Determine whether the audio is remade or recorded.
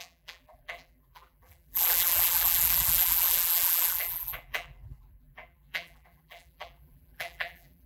remade